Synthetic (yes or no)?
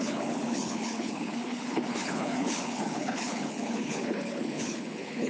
yes